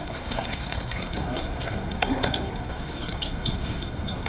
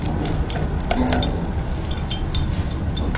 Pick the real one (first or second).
second